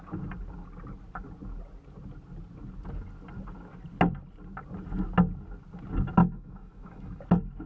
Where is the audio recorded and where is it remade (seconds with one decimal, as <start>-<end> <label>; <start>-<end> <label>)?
0.0-6.2 recorded; 6.2-7.2 remade; 7.2-7.7 recorded